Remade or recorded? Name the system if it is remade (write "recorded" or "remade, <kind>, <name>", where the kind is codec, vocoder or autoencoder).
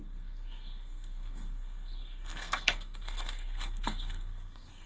remade, codec, SNAC